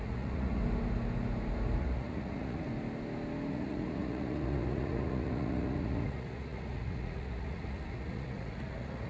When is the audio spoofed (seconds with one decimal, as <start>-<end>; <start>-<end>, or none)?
0.0-0.6; 1.8-2.7; 3.5-9.1